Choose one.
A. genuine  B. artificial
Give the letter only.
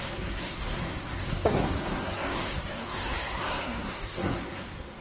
B